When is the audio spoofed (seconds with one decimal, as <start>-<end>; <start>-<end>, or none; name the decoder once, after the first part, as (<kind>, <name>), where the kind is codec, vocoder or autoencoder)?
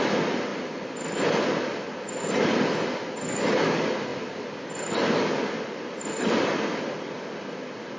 none